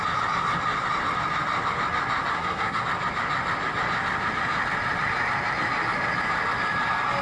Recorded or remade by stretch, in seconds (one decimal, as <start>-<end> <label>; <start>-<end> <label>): 0.0-2.3 recorded; 2.3-2.8 remade; 2.8-7.2 recorded